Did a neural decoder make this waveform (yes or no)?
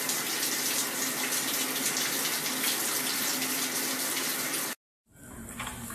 no